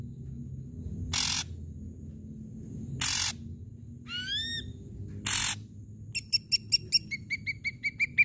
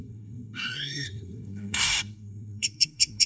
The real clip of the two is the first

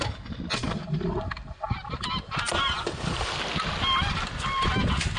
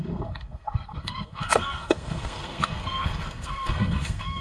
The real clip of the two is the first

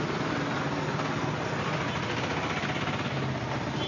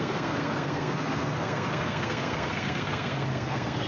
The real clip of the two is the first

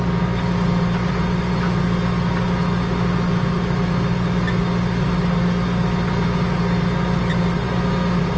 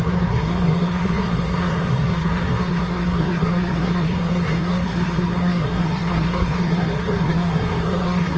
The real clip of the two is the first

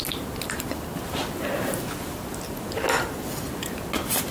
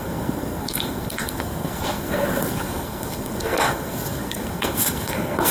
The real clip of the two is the first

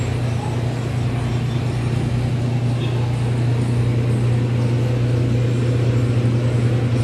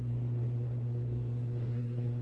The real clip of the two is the first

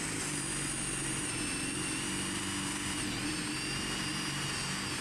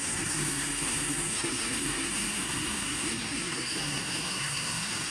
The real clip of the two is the first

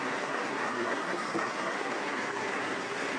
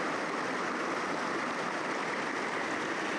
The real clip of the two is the second